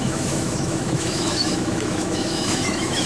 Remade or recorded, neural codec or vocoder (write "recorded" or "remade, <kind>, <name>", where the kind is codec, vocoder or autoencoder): remade, autoencoder, DAC-VAE